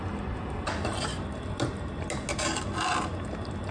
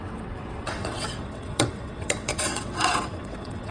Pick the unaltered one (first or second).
first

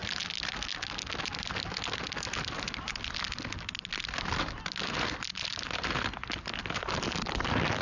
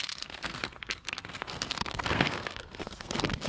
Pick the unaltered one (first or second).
first